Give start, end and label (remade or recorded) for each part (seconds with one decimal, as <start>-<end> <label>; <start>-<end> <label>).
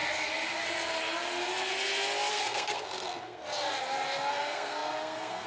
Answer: 0.0-2.3 recorded; 2.3-3.4 remade; 3.4-4.3 recorded; 4.3-5.5 remade